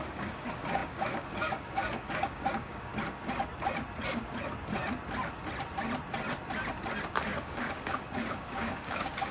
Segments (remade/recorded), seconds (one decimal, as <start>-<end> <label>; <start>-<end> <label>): 0.0-2.9 remade; 2.9-7.1 recorded; 7.1-9.3 remade